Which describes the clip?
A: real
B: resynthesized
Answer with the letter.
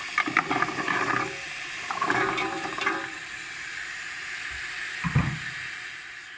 A